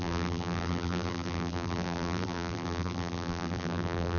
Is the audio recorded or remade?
remade